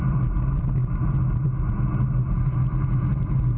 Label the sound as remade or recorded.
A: recorded